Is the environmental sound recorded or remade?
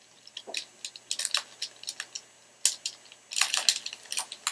recorded